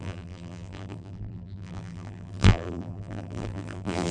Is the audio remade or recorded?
remade